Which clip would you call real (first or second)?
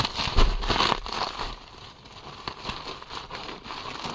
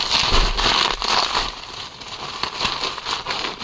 second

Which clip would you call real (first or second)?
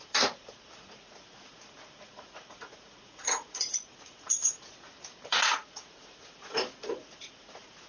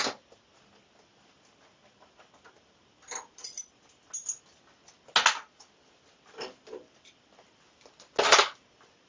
second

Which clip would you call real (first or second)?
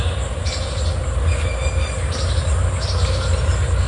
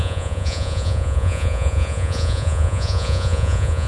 first